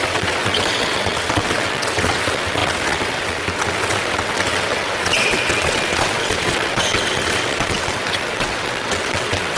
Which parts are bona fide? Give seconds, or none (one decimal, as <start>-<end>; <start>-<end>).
none